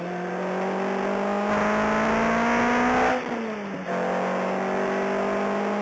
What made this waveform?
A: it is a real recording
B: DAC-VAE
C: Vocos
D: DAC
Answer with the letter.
A